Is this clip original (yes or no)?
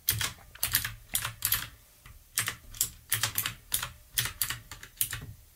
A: no